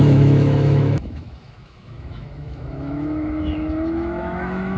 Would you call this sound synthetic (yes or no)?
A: yes